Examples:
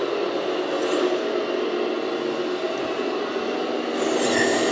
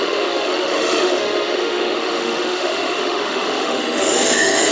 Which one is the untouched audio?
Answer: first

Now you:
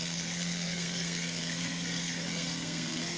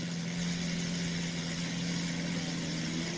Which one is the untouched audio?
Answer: second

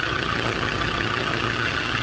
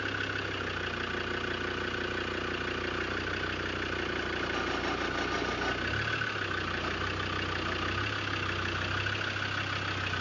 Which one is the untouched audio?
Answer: second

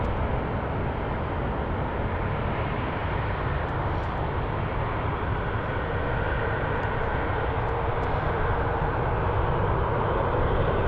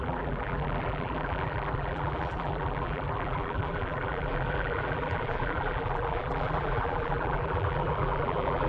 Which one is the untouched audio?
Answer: first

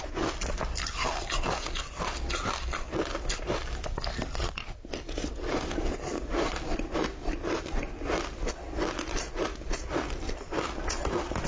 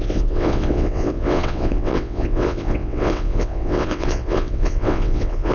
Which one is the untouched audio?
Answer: first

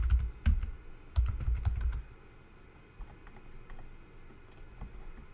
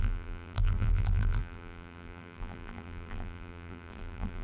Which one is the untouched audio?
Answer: first